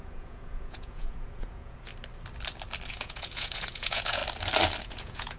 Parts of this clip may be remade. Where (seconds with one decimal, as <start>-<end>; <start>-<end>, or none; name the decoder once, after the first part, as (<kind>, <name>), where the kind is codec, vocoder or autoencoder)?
0.0-1.9 (vocoder, Vocos); 2.9-4.2; 4.8-5.4